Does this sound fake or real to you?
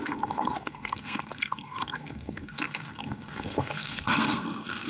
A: fake